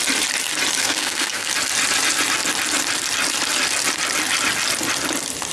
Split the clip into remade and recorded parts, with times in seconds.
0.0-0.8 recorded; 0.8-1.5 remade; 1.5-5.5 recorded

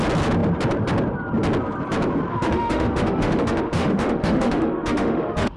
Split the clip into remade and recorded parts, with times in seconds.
0.0-2.3 recorded; 2.3-5.6 remade

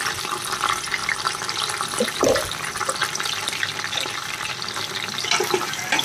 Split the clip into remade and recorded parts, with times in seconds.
0.0-1.0 recorded; 1.0-1.9 remade; 1.9-3.0 recorded; 3.0-4.5 remade; 4.5-6.0 recorded

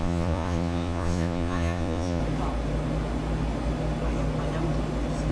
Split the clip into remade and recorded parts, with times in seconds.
0.0-2.2 remade; 2.2-5.3 recorded

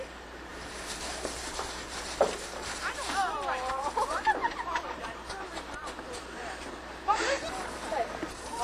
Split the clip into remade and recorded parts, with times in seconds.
0.0-8.6 remade